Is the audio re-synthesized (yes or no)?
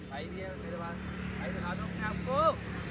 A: no